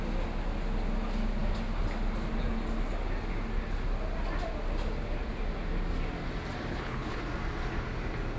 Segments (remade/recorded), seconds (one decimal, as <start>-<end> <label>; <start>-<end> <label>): 0.0-6.7 recorded; 6.7-7.2 remade; 7.2-8.4 recorded